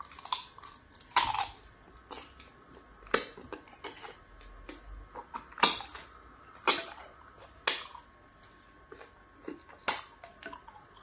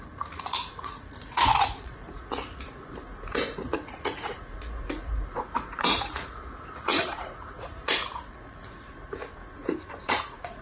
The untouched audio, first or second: first